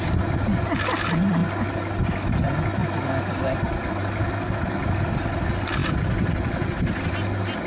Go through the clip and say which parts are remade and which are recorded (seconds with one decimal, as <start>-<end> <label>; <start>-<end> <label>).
0.0-7.7 recorded